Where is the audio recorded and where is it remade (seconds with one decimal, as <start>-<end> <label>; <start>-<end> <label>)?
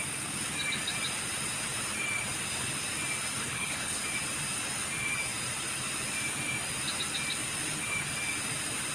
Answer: 0.0-3.4 recorded; 3.4-4.0 remade; 4.0-8.9 recorded